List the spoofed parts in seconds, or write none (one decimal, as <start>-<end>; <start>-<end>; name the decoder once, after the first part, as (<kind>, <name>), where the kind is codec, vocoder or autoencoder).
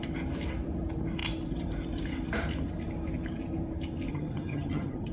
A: 4.1-5.1 (vocoder, HiFi-GAN)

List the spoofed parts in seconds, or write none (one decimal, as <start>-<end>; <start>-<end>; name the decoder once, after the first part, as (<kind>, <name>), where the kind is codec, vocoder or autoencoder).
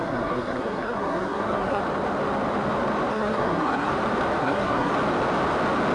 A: 0.0-1.8 (codec, SNAC); 3.1-3.9; 4.4-4.9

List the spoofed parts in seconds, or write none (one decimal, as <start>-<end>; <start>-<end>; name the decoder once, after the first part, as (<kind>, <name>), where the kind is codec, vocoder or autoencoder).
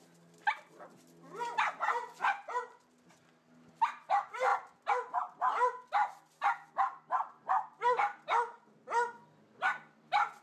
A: none